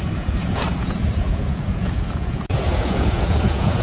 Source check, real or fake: fake